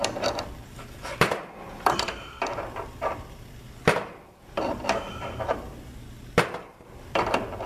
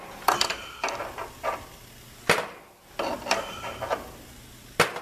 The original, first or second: second